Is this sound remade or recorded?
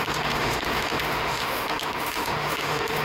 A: remade